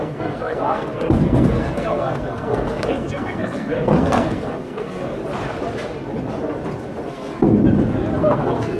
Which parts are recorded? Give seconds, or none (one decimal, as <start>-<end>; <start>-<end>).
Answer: 5.2-7.1; 7.5-8.2